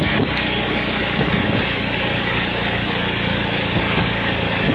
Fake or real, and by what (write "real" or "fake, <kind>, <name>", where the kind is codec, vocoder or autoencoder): fake, codec, DAC